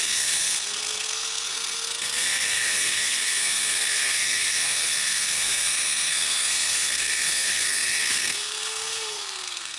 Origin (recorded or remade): remade